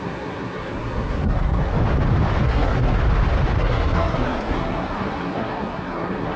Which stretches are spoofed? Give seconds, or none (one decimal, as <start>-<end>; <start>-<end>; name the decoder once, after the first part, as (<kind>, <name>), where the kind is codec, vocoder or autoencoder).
0.0-1.7 (codec, SNAC); 2.4-3.0; 3.6-6.4